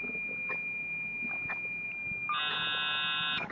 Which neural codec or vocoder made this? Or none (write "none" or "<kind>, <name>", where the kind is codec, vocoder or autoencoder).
none